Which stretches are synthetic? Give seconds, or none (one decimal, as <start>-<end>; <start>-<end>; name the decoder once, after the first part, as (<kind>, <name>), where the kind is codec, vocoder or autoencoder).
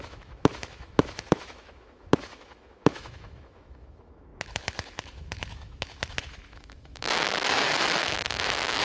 0.0-8.8 (autoencoder, DAC-VAE)